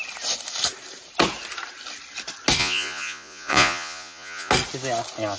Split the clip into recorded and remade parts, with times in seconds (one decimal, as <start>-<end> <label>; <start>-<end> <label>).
0.0-2.6 recorded; 2.6-4.5 remade; 4.5-5.4 recorded